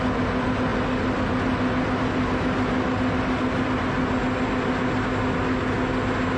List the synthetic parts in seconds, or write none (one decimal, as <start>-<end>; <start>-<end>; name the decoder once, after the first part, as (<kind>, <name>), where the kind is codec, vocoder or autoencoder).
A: none

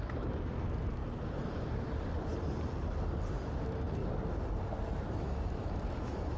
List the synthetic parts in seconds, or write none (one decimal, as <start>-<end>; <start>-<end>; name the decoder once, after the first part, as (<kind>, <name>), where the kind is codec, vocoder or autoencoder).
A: 0.0-1.0 (autoencoder, DAC-VAE); 3.6-4.0; 5.1-6.4